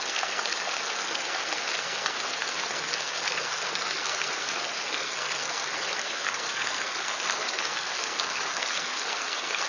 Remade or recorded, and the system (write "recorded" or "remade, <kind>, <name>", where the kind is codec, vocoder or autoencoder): remade, codec, SNAC